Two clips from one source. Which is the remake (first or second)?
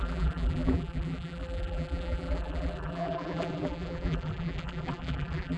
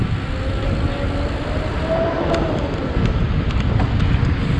first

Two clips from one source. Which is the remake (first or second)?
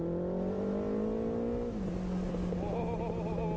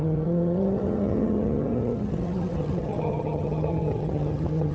second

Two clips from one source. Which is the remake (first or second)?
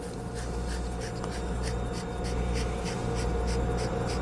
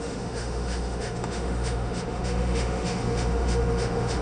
second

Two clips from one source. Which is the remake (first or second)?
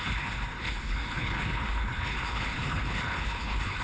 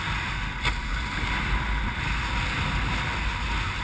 first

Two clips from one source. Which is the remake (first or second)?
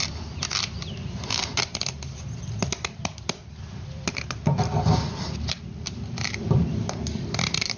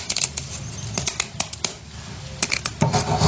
first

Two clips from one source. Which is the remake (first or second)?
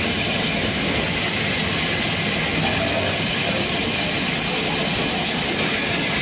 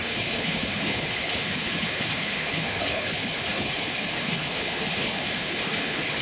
second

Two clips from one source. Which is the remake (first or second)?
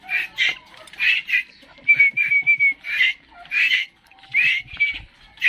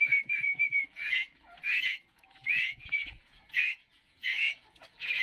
second